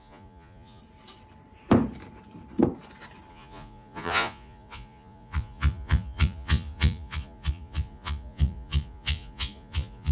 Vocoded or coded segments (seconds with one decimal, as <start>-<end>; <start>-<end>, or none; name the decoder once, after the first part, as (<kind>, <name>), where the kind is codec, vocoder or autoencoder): 0.0-0.8 (vocoder, Vocos); 3.3-10.1